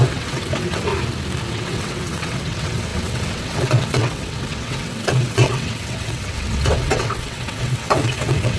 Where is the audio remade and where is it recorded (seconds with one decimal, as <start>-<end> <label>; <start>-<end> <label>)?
0.0-0.9 remade; 0.9-1.5 recorded; 1.5-8.6 remade